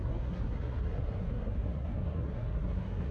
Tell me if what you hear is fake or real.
fake